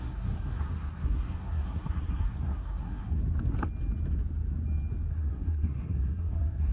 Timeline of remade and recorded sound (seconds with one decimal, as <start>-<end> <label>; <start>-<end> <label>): 0.0-3.2 remade; 3.2-5.1 recorded; 5.1-6.7 remade